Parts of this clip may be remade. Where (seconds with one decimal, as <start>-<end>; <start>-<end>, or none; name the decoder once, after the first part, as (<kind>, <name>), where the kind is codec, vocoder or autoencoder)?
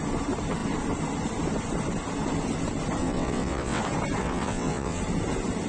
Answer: 3.0-3.8 (vocoder, WaveNeXt); 4.2-5.0